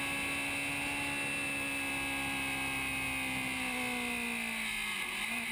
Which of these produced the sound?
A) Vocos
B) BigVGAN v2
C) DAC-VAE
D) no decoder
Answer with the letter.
D